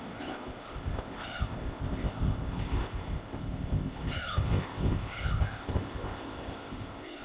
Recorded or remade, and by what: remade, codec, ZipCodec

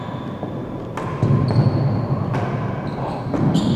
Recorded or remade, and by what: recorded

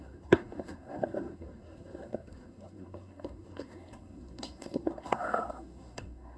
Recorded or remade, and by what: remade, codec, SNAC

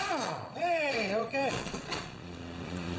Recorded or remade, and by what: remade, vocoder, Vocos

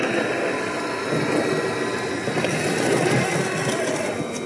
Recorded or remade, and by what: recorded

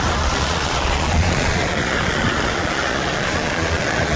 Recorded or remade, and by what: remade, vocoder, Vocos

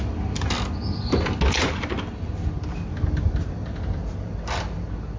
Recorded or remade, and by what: recorded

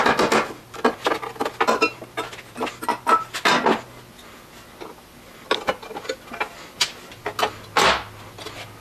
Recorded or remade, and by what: recorded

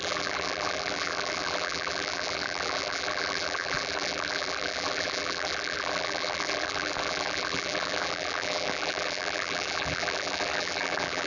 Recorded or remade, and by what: remade, vocoder, BigVGAN v2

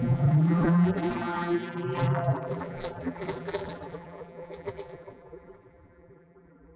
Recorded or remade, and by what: remade, vocoder, BigVGAN v2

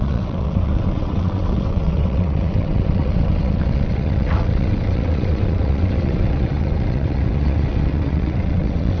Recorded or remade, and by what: remade, vocoder, WaveNeXt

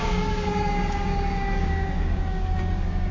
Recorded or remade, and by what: remade, codec, DAC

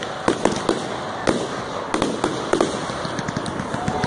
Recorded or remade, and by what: recorded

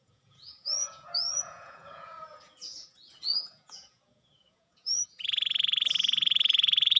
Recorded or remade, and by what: remade, vocoder, Vocos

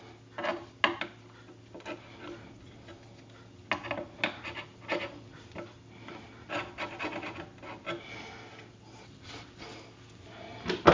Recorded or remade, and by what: recorded